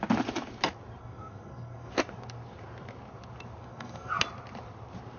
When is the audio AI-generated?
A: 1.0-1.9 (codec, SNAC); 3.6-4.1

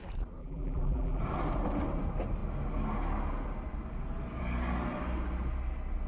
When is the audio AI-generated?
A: 0.4-1.2 (vocoder, BigVGAN v2)

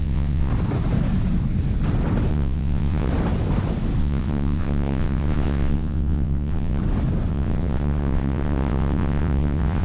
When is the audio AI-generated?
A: 0.0-0.5 (vocoder, WaveNeXt); 2.3-3.1; 4.0-6.8; 7.3-9.8

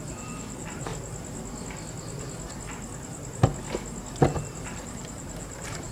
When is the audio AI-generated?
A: 0.0-0.9 (vocoder, BigVGAN v2); 4.4-5.9

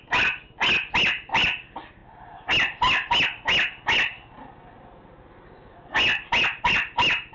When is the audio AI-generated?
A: none